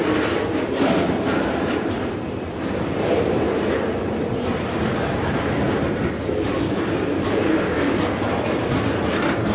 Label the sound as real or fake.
real